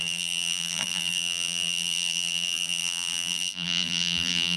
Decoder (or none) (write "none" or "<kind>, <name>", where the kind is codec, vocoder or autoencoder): vocoder, BigVGAN v2